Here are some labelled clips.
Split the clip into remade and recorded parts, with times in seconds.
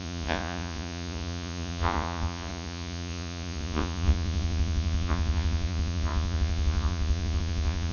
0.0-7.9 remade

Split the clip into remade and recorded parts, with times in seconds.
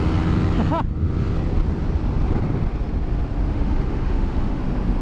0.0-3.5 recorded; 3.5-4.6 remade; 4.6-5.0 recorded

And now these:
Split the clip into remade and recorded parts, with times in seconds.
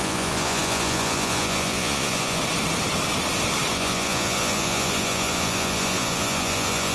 0.0-2.4 remade; 2.4-3.7 recorded; 3.7-6.9 remade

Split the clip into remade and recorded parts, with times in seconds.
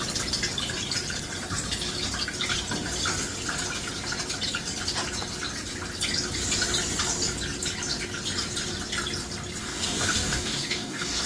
0.0-9.6 recorded; 9.6-11.3 remade